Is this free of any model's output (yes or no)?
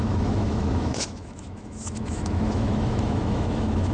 no